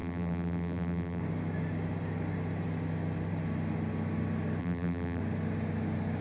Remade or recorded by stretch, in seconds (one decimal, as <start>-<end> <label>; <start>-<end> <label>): 0.0-1.2 remade; 1.2-4.6 recorded; 4.6-5.2 remade; 5.2-6.2 recorded

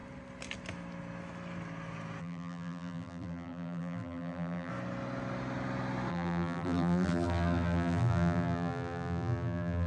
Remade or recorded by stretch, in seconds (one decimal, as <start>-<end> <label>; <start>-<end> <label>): 0.0-2.2 recorded; 2.2-4.7 remade; 4.7-6.1 recorded; 6.1-9.9 remade

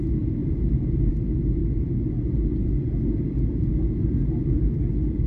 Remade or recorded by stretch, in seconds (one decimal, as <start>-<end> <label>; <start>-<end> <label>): 0.0-0.4 recorded; 0.4-1.1 remade; 1.1-5.3 recorded